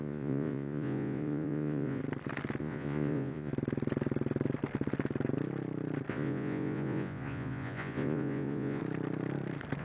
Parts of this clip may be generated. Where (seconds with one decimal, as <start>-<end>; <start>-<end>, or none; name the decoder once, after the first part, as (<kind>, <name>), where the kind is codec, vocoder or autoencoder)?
0.0-2.0 (vocoder, Vocos); 2.6-3.5; 6.1-8.8